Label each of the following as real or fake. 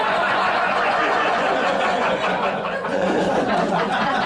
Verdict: fake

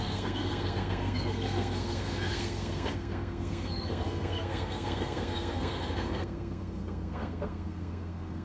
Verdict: fake